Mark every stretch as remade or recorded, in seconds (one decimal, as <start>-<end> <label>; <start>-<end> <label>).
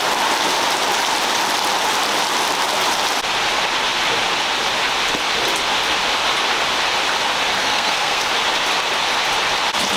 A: 0.0-7.6 recorded; 7.6-8.3 remade; 8.3-10.0 recorded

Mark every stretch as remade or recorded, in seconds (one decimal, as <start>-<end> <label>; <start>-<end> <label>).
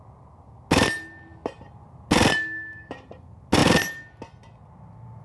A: 0.0-5.2 recorded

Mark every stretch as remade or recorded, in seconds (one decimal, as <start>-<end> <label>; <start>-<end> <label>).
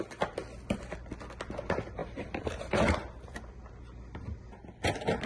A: 0.0-2.0 recorded; 2.0-3.7 remade; 3.7-5.3 recorded